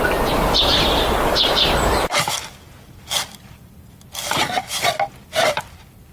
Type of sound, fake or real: real